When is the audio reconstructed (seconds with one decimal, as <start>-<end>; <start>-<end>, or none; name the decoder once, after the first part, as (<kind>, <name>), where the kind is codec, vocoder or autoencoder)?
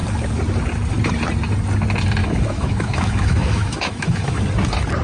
2.2-4.4 (autoencoder, DAC-VAE)